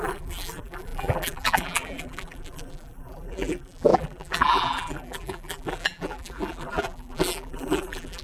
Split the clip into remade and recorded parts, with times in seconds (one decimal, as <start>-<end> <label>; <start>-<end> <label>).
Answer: 0.0-8.2 remade